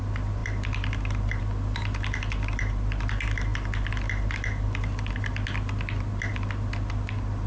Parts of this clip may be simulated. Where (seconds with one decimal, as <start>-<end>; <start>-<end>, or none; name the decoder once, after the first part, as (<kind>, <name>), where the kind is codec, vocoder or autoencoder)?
none